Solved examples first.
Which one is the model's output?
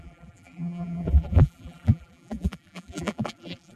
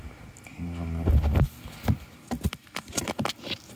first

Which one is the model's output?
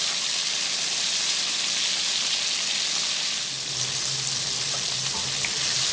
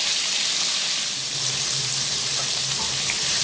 second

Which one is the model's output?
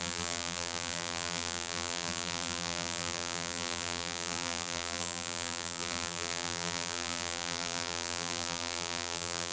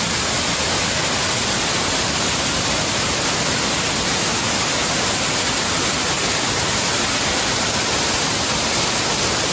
first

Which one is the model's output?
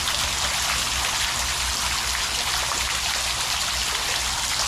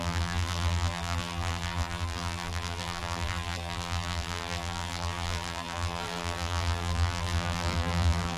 second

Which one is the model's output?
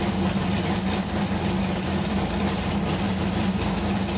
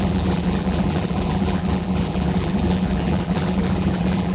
second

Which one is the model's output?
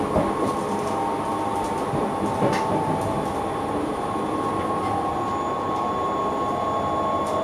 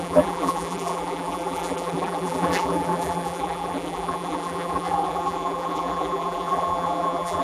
second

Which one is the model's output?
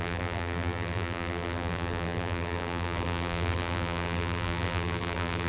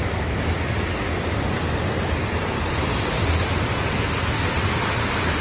first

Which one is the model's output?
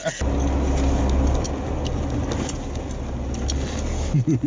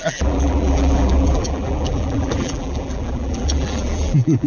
second